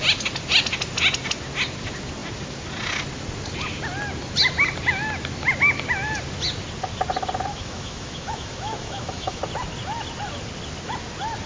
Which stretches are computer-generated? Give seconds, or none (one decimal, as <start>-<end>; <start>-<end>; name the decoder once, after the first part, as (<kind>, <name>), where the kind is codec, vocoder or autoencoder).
7.5-9.4 (autoencoder, DAC-VAE)